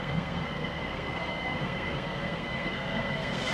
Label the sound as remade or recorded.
remade